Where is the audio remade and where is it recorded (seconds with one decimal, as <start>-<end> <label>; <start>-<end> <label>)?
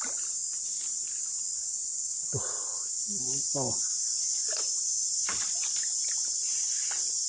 0.0-7.3 recorded